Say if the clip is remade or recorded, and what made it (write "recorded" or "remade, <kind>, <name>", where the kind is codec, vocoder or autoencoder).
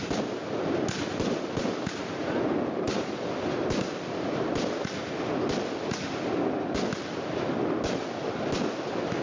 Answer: recorded